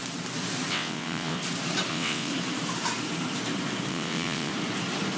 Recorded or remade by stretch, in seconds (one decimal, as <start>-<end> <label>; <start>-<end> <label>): 0.0-0.7 recorded; 0.7-1.4 remade; 1.4-1.9 recorded; 1.9-2.3 remade; 2.3-3.9 recorded; 3.9-4.5 remade; 4.5-5.2 recorded